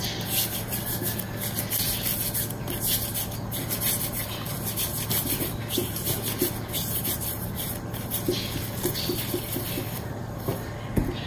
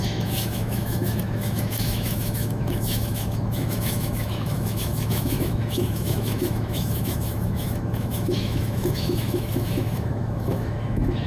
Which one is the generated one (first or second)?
second